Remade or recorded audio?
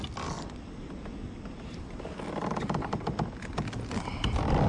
recorded